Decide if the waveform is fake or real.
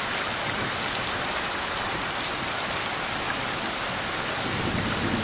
real